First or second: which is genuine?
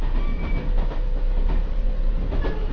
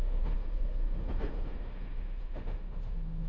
first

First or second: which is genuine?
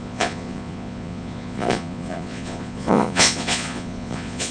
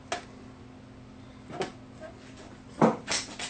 second